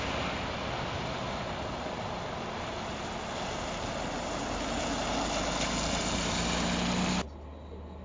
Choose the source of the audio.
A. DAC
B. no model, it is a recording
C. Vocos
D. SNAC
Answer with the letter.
B